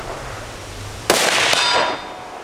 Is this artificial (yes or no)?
no